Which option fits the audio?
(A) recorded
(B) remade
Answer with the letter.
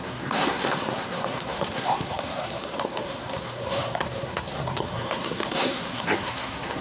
B